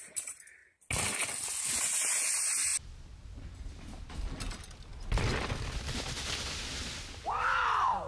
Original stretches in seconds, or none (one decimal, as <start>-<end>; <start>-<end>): 0.6-1.8; 2.7-4.1; 4.9-7.2